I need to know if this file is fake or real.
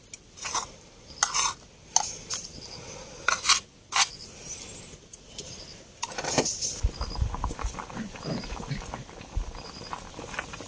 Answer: real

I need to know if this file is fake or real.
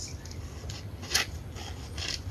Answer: fake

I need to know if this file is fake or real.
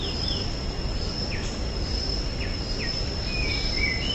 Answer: fake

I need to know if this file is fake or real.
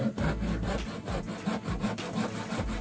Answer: real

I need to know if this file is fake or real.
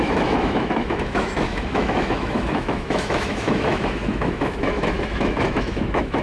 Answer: fake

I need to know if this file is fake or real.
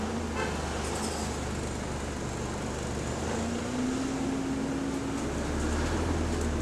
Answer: real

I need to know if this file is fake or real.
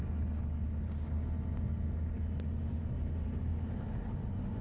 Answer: real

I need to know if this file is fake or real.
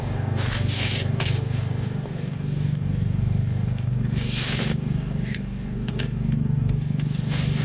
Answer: fake